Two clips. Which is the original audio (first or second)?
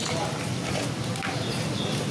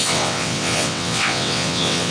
first